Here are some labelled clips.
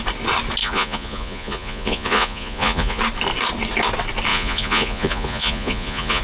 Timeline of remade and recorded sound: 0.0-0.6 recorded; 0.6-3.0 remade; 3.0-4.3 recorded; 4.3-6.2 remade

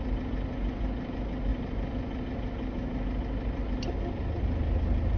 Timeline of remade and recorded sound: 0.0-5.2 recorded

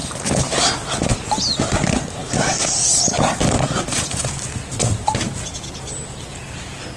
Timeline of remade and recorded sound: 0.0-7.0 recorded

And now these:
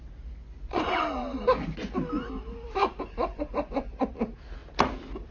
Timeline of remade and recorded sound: 0.0-0.4 recorded; 0.4-1.0 remade; 1.0-2.8 recorded; 2.8-3.9 remade; 3.9-5.3 recorded

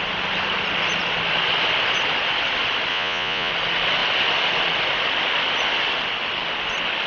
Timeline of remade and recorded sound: 0.0-2.9 recorded; 2.9-3.5 remade; 3.5-7.1 recorded